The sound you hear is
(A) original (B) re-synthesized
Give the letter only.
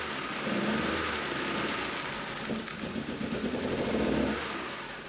A